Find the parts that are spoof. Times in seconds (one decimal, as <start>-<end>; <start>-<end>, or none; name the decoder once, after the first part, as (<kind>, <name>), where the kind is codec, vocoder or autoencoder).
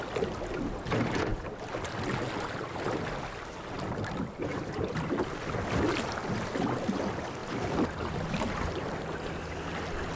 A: 4.5-6.2 (vocoder, BigVGAN v2); 7.4-8.7